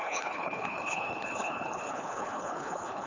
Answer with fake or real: fake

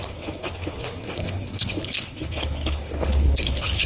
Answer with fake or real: fake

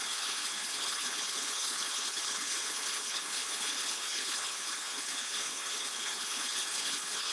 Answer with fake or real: fake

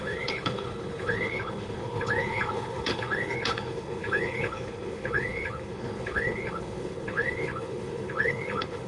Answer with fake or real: fake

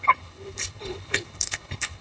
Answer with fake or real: fake